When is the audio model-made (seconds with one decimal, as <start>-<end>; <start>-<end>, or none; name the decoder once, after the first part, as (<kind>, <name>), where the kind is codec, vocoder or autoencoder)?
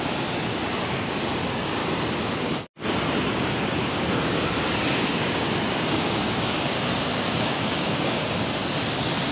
0.0-1.8 (codec, DAC); 3.4-9.3